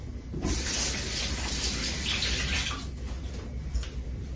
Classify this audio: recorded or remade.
recorded